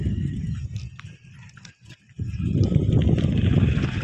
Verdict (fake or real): real